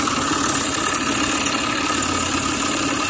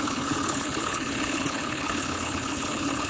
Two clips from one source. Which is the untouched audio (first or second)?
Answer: first